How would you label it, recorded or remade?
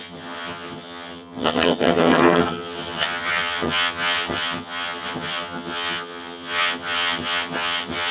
remade